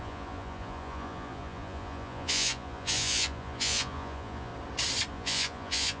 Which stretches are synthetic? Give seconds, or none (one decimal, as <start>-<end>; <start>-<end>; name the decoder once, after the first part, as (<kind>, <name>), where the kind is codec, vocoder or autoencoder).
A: 0.0-4.5 (vocoder, Vocos); 5.1-6.0